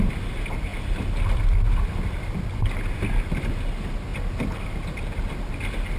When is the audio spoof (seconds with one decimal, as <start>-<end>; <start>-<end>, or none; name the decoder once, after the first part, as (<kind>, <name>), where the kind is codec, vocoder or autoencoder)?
none